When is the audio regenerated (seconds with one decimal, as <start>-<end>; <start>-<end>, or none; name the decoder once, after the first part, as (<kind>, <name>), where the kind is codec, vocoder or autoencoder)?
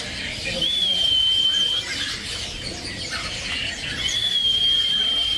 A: 0.0-5.4 (vocoder, BigVGAN v2)